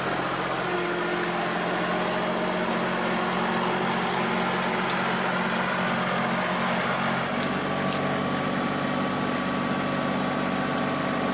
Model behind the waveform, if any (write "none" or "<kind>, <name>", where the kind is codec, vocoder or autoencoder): none